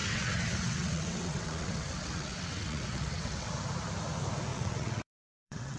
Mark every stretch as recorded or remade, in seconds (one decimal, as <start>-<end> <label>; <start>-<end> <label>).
0.0-3.5 remade; 3.5-4.5 recorded; 4.5-5.8 remade